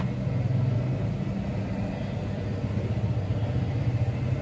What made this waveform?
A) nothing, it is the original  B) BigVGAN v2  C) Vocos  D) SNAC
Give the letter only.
A